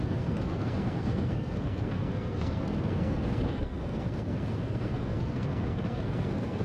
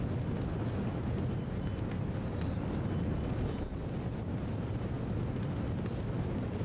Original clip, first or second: second